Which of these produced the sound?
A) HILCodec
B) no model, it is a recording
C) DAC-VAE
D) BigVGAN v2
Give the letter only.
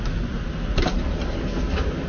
B